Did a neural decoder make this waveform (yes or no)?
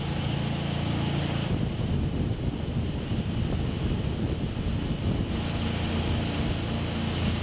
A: no